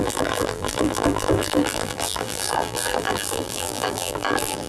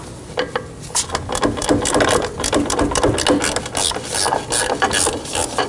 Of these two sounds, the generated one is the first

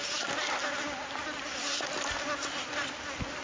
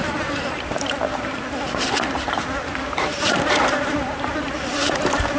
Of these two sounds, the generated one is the second